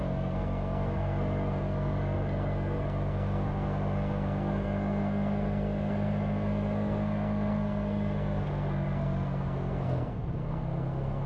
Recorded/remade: remade